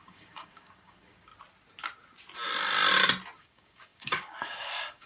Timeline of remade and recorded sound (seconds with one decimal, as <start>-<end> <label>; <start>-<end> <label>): 0.0-1.3 remade; 1.3-3.4 recorded; 3.4-5.1 remade